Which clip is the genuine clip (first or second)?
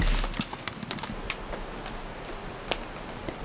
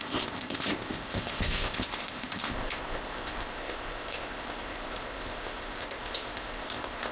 first